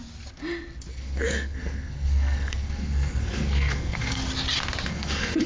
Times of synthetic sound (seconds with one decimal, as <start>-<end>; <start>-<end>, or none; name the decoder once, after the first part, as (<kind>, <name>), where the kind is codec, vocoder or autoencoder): 0.9-4.2 (codec, SNAC); 4.9-5.5